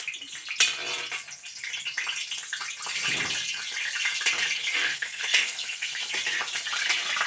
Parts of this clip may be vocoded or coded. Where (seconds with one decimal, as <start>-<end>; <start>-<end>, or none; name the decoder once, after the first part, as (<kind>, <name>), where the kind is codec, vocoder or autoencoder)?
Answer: 4.8-6.0 (codec, SNAC)